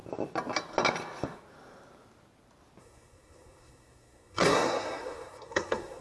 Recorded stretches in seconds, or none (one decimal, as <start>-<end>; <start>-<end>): 0.0-2.8